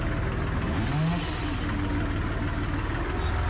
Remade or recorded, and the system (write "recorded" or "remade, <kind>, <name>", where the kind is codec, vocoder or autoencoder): recorded